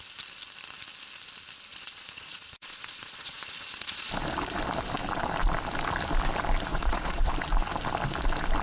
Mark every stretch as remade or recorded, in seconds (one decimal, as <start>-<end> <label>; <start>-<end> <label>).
0.0-1.7 recorded; 1.7-4.1 remade; 4.1-6.7 recorded; 6.7-7.3 remade; 7.3-8.6 recorded